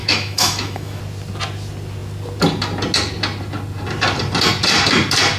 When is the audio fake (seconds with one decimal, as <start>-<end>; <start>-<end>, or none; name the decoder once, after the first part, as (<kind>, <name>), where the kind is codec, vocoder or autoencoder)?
0.0-1.0 (autoencoder, DAC-VAE)

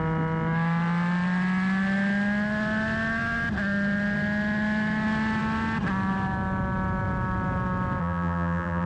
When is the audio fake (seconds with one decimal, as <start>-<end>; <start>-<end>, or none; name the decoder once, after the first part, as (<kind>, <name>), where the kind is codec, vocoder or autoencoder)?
8.0-8.9 (vocoder, BigVGAN v2)

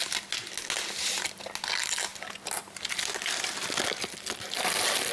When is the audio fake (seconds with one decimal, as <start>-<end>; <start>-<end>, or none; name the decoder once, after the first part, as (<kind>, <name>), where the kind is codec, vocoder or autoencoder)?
none

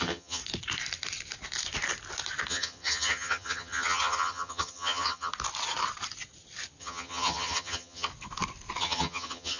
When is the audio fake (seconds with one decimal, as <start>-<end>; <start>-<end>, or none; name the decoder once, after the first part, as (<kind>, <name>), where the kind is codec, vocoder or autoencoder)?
0.0-0.4 (vocoder, HiFi-GAN); 2.5-5.3; 6.8-8.1; 8.8-9.6